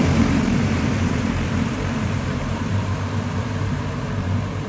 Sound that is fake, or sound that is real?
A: fake